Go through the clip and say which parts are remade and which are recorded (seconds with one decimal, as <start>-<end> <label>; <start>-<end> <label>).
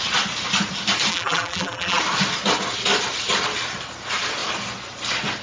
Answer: 0.0-1.1 recorded; 1.1-2.0 remade; 2.0-5.4 recorded